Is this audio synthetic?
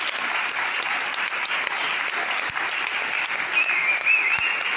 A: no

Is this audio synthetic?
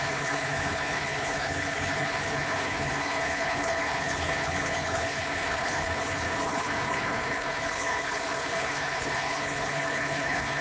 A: yes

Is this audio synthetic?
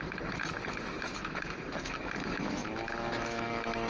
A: yes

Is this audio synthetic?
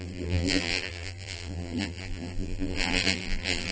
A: yes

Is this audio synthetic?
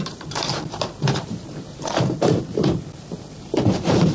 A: yes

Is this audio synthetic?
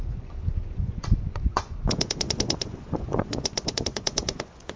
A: yes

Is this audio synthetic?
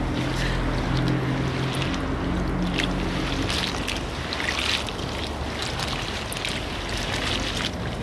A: no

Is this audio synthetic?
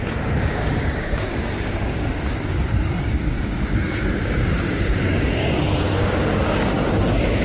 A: yes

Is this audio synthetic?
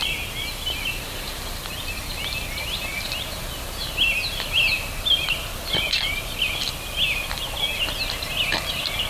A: no